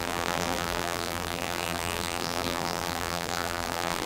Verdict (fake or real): fake